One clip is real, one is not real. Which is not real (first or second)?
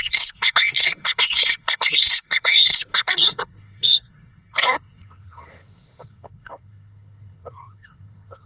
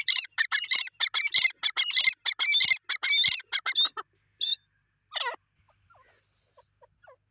first